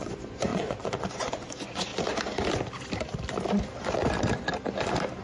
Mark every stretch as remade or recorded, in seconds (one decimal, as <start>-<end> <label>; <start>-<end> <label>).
0.0-1.9 remade; 1.9-5.2 recorded